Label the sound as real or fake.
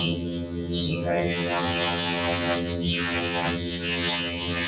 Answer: fake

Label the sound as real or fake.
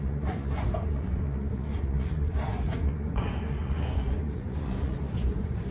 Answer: fake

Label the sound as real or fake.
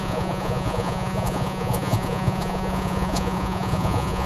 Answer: fake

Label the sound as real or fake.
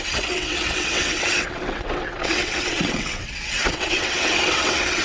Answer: fake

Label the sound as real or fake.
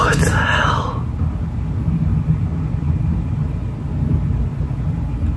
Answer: real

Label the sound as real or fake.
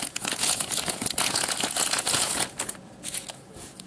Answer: fake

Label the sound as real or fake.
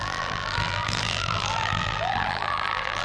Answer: fake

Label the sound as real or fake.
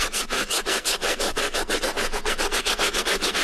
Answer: fake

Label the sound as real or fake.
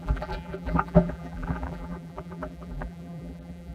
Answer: fake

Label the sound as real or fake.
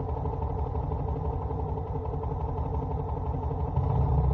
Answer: real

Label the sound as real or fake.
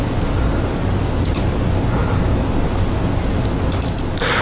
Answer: real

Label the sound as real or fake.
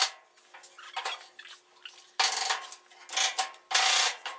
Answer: real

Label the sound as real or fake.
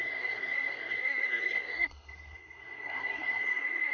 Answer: fake